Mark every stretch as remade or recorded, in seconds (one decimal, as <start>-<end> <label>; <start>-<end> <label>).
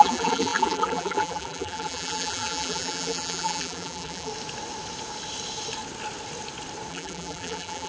0.0-4.3 remade; 4.3-6.9 recorded; 6.9-7.9 remade